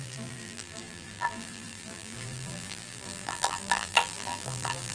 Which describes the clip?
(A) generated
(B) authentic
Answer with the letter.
A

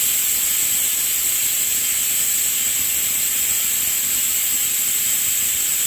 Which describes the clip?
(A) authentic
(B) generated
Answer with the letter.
A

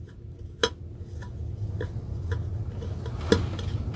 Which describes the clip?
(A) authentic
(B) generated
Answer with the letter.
A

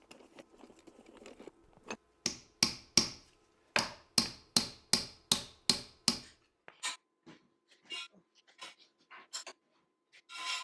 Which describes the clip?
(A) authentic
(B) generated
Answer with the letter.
A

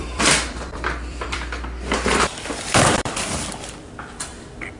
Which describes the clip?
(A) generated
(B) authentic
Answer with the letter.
A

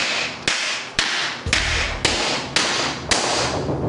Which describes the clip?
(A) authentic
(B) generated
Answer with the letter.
A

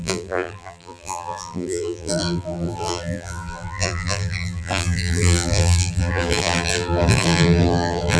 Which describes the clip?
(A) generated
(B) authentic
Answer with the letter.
A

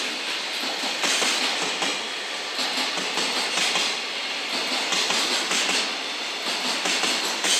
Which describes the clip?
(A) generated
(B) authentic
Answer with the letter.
B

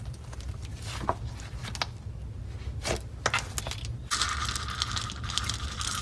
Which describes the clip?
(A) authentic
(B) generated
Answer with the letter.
A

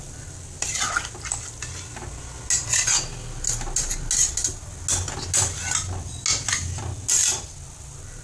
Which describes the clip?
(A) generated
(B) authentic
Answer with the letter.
B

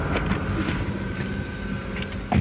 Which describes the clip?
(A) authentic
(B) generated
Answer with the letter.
A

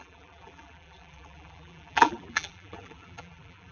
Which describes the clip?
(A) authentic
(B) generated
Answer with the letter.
B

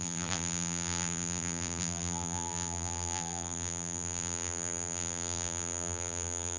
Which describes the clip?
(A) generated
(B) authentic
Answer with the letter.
A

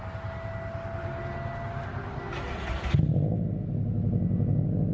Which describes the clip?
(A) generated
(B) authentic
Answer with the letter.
B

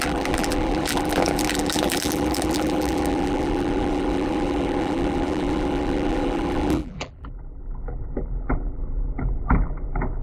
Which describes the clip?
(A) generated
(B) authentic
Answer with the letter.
A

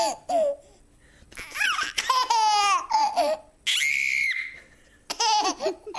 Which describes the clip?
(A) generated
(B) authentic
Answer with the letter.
B